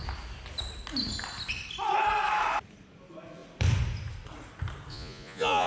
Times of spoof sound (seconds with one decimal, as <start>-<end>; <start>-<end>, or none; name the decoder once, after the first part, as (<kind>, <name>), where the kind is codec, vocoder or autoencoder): 4.9-5.7 (vocoder, Vocos)